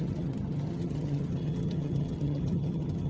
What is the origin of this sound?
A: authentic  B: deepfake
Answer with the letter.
B